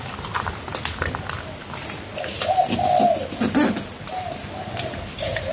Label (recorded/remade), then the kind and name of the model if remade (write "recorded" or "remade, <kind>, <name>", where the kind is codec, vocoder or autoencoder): recorded